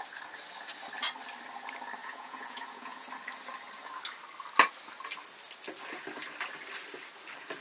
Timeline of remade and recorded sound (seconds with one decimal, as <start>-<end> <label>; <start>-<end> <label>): 0.0-2.0 recorded; 2.0-3.1 remade; 3.1-7.6 recorded